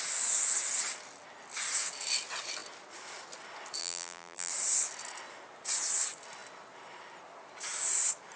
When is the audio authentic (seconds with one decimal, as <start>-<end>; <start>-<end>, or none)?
0.0-3.8; 4.5-8.4